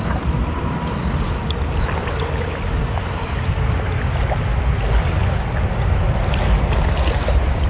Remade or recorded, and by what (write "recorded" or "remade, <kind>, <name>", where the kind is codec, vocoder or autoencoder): recorded